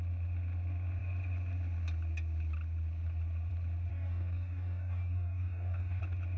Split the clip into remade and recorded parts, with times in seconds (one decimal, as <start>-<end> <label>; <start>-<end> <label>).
0.0-3.9 recorded; 3.9-6.0 remade; 6.0-6.4 recorded